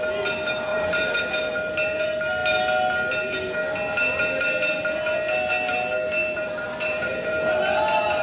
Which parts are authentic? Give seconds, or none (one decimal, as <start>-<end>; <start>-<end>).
0.0-0.7; 1.2-6.2; 7.6-8.2